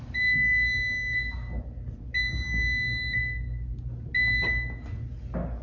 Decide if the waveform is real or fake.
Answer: real